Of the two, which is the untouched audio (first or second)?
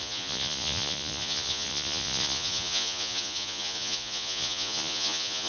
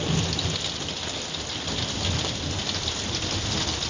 second